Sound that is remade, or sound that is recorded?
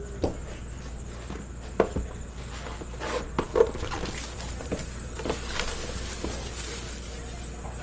recorded